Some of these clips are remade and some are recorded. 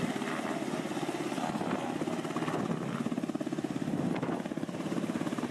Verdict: recorded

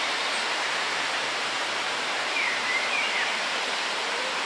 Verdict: remade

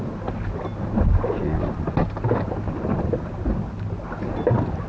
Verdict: recorded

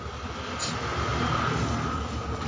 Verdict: recorded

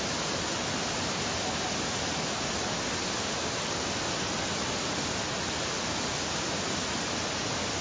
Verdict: recorded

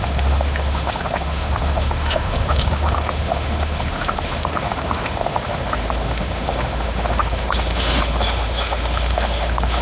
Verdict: remade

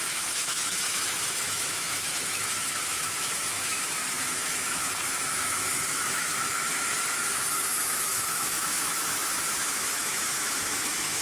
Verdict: remade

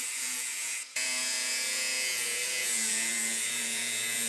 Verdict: remade